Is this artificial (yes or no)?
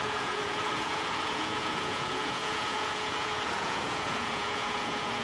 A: yes